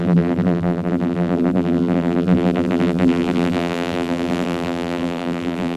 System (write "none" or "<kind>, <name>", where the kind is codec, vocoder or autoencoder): vocoder, BigVGAN v2